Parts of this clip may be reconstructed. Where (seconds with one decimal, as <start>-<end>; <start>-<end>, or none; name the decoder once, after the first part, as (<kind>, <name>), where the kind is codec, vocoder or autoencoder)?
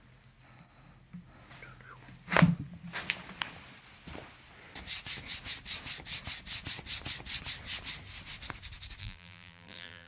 9.0-10.1 (vocoder, BigVGAN v2)